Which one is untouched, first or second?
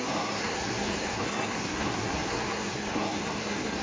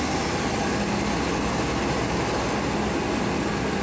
second